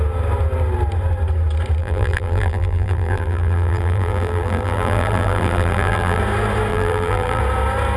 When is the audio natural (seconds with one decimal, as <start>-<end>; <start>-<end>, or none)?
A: 0.0-1.8; 6.2-6.7; 7.4-8.0